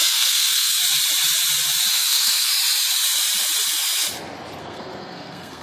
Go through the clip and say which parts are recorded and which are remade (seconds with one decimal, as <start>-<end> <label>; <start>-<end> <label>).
0.0-0.8 remade; 0.8-1.9 recorded; 1.9-2.5 remade; 2.5-4.6 recorded; 4.6-5.6 remade